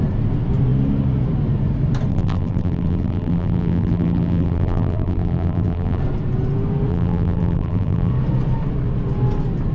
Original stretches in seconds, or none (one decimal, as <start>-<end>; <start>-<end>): 0.0-2.1; 6.0-6.9; 8.1-9.7

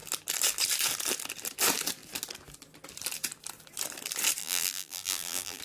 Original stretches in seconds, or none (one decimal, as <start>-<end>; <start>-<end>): 0.0-4.4

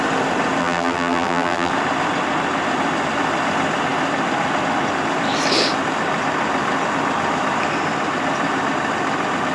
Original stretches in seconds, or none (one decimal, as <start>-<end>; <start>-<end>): 0.0-0.6; 1.7-9.5